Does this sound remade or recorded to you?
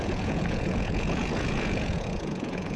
remade